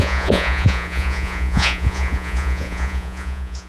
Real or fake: fake